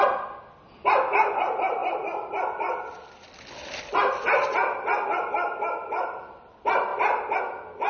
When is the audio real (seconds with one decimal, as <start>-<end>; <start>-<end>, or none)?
0.0-7.9